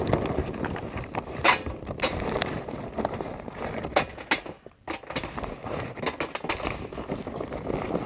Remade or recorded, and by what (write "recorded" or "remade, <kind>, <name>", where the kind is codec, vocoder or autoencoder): recorded